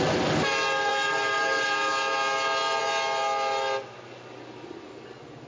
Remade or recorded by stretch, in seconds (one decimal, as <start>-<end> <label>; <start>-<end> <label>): 0.0-5.5 recorded